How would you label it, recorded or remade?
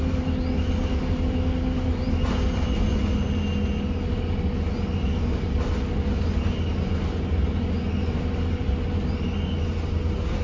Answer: recorded